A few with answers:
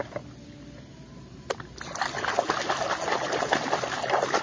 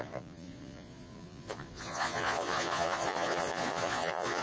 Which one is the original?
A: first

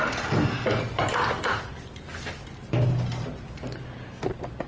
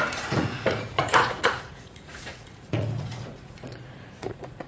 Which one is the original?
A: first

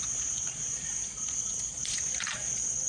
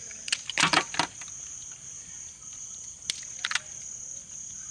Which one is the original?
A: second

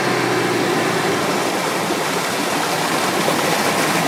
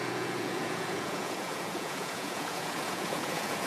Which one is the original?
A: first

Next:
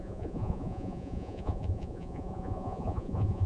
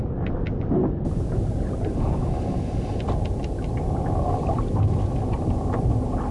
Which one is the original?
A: second